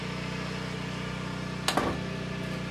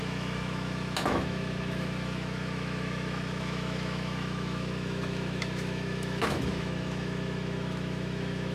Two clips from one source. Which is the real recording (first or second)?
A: first